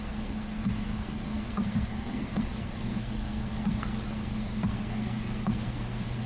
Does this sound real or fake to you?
fake